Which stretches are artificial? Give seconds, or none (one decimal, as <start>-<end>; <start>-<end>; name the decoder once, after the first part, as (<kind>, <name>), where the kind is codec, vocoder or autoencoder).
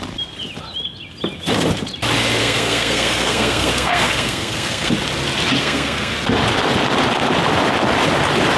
2.4-4.9 (codec, SNAC); 5.6-6.1